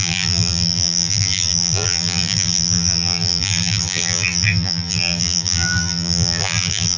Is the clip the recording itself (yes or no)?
no